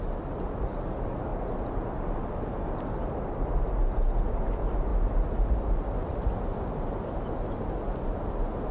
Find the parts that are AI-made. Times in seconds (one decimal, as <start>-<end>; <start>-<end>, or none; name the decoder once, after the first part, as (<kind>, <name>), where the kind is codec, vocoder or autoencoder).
none